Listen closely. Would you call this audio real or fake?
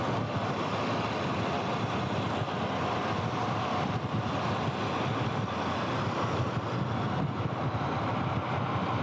real